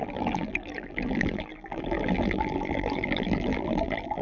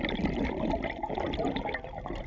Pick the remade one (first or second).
first